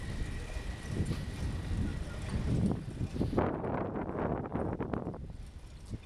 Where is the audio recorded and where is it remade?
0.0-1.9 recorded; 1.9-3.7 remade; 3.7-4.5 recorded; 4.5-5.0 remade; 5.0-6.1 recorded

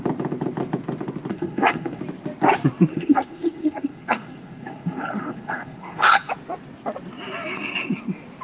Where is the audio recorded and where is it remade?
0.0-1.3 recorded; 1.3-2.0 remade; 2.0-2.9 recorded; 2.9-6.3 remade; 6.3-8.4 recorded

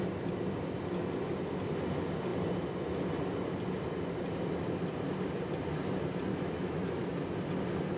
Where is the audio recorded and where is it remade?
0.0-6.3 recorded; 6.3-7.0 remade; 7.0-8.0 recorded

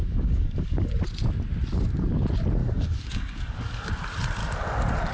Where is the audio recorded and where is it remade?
0.0-0.9 remade; 0.9-2.6 recorded; 2.6-3.9 remade; 3.9-4.4 recorded; 4.4-5.1 remade